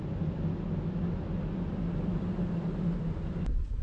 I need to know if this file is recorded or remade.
recorded